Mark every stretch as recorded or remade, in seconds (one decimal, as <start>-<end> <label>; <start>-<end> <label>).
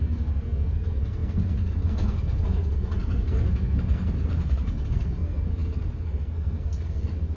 0.0-7.4 remade